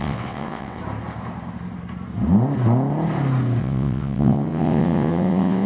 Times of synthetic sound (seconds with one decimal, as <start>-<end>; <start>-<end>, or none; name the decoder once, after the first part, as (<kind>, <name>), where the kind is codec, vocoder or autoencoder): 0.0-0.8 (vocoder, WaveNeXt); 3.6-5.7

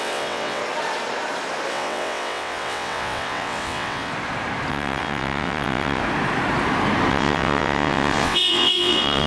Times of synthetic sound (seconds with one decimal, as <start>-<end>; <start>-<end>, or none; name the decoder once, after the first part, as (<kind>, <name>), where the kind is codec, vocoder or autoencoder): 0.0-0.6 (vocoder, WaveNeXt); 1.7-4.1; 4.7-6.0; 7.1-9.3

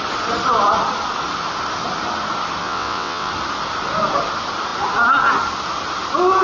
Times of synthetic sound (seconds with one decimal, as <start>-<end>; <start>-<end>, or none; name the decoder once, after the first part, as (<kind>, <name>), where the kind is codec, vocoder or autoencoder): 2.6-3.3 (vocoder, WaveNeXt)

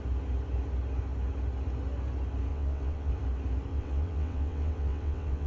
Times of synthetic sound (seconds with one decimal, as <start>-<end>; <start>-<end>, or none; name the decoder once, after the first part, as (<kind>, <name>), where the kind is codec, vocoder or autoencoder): 2.5-3.1 (vocoder, WaveNeXt); 3.7-5.5

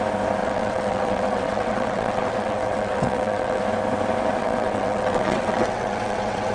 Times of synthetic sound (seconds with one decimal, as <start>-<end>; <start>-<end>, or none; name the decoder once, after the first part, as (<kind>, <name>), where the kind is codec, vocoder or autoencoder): 0.4-3.6 (vocoder, WaveNeXt); 4.4-6.5